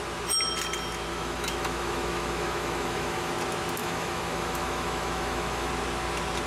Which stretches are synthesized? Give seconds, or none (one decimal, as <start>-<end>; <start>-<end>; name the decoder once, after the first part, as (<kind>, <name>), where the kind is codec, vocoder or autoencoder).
1.1-3.3 (autoencoder, DAC-VAE); 3.8-5.7